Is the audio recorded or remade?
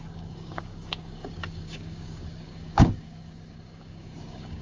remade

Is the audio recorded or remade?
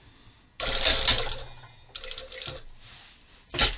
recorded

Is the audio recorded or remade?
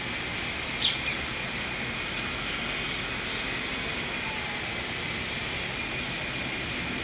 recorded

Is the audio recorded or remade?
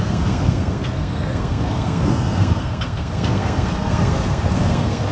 remade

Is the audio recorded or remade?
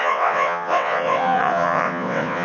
remade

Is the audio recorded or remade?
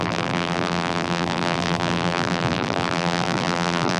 remade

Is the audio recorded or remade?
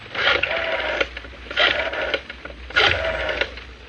recorded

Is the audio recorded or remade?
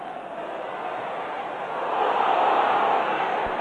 recorded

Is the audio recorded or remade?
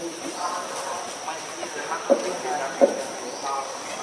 recorded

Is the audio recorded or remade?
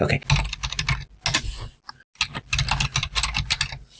recorded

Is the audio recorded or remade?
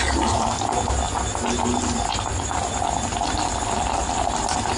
recorded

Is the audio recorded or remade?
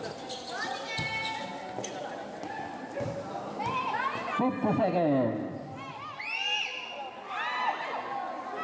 recorded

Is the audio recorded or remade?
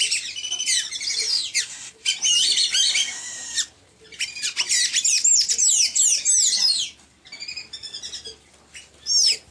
remade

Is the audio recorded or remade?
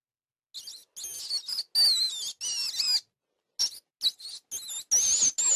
recorded